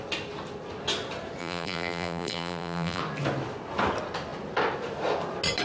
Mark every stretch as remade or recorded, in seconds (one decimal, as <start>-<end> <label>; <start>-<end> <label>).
0.0-1.4 recorded; 1.4-3.0 remade; 3.0-5.6 recorded